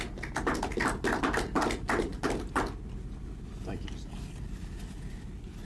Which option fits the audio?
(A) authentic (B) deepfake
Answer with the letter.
A